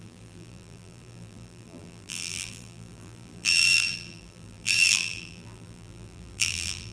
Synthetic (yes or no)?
yes